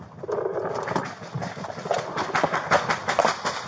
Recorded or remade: recorded